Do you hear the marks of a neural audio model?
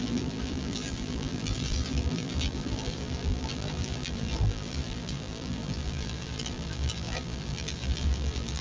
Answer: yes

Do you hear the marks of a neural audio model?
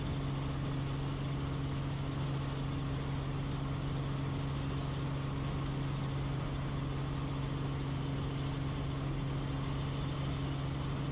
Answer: no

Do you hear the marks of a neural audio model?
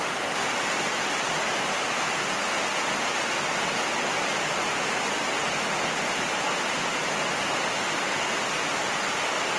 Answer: no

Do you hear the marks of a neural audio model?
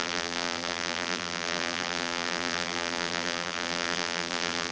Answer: yes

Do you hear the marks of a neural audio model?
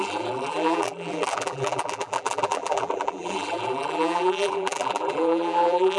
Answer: yes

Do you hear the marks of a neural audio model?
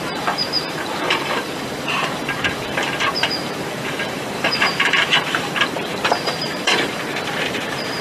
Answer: yes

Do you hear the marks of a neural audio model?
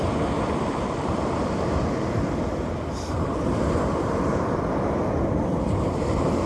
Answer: yes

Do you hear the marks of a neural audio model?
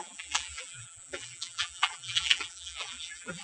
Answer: yes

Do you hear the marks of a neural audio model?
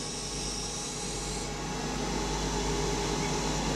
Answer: no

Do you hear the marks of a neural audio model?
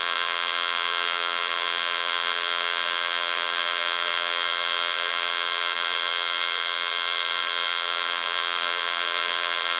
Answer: yes